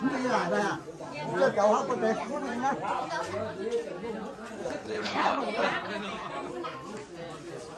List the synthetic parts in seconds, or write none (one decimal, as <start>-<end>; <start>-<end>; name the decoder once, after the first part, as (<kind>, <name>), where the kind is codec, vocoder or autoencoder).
4.8-5.4 (codec, HILCodec)